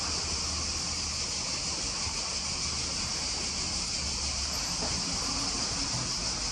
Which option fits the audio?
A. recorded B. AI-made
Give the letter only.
A